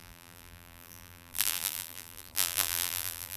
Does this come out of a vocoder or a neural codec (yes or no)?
yes